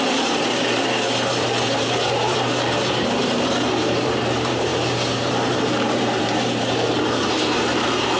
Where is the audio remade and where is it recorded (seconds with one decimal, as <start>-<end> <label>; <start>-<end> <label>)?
0.0-8.2 remade